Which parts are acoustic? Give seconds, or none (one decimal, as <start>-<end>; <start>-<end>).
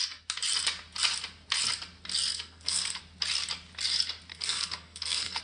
0.0-2.3; 3.0-4.3